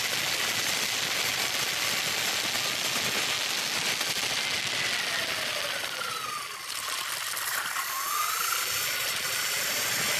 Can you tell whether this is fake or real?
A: real